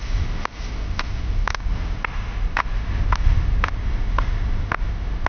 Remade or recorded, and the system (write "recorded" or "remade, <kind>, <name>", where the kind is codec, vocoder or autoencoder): recorded